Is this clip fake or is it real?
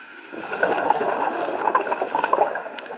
fake